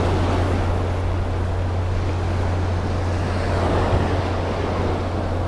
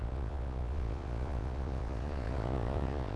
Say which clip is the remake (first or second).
second